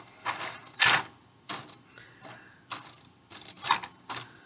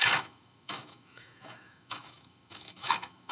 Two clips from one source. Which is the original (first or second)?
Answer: first